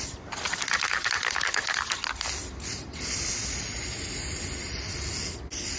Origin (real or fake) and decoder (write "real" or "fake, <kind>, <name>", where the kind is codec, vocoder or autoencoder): real